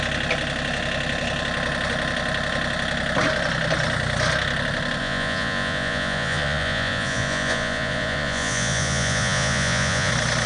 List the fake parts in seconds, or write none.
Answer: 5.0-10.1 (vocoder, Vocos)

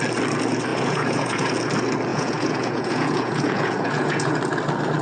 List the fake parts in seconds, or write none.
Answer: 0.7-1.5 (vocoder, Vocos); 2.1-4.4

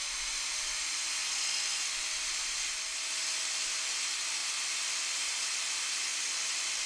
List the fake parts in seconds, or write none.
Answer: none

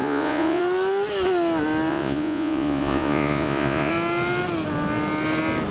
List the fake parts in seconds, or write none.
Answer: 0.0-0.6 (vocoder, Vocos); 1.9-3.9

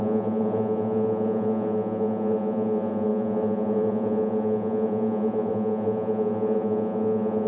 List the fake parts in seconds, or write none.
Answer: 0.0-7.5 (vocoder, Vocos)